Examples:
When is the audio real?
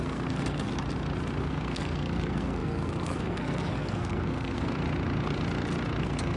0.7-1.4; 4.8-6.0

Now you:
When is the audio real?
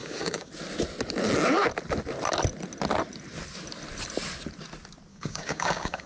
0.5-5.1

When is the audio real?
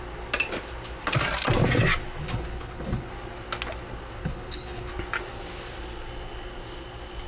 0.0-2.2; 3.1-4.2; 4.9-7.3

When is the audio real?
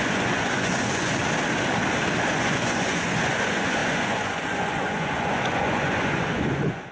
1.2-2.3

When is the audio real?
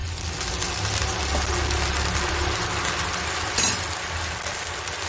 0.0-5.1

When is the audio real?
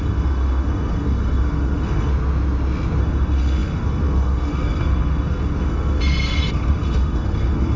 2.1-3.0